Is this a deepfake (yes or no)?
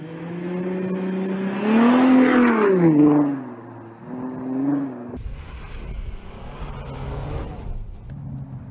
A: no